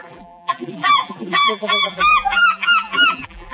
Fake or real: fake